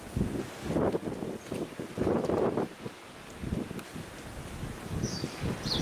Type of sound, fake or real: real